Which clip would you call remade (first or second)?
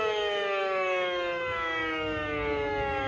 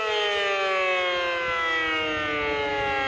first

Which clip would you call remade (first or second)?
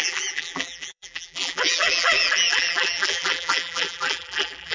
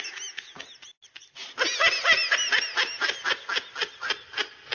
first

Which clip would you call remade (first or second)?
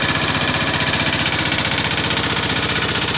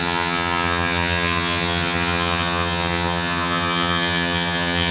second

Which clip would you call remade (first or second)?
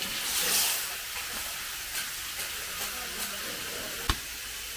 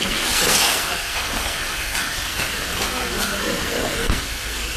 second